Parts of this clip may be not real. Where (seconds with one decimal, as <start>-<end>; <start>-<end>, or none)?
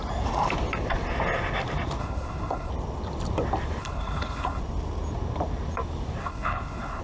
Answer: 2.0-2.7; 3.8-4.6; 6.2-7.0